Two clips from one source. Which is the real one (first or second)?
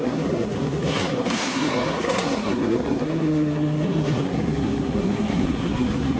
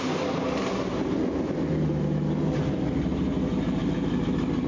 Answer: second